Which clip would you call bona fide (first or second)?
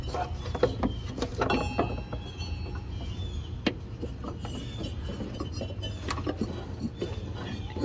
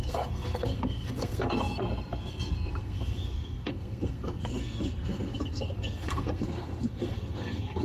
first